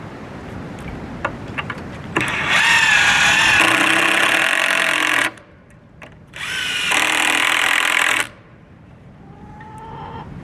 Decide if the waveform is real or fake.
real